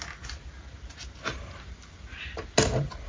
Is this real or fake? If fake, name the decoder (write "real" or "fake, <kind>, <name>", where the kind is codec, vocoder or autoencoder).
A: real